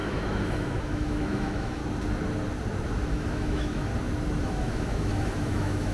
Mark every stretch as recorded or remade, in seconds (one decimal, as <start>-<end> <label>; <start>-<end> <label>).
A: 0.0-1.8 remade; 1.8-3.1 recorded; 3.1-3.9 remade; 3.9-4.4 recorded; 4.4-5.9 remade